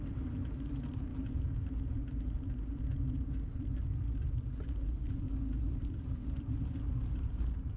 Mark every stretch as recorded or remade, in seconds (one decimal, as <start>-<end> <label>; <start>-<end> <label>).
0.0-7.8 recorded